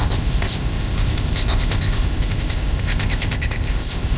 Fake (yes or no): yes